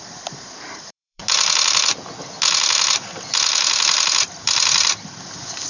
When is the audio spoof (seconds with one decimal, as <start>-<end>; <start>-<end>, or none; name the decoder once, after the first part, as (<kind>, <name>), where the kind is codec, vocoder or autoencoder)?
0.0-1.2 (vocoder, BigVGAN v2); 4.2-5.7